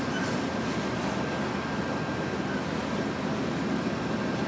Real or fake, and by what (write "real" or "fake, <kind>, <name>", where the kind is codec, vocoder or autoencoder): real